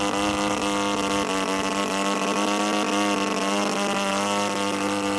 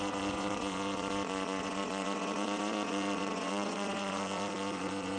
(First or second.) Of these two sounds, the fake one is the second